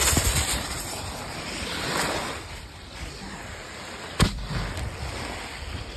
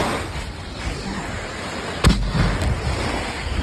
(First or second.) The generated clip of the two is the first